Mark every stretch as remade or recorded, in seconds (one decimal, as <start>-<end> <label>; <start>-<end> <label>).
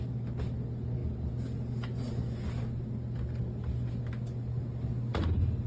0.0-5.7 recorded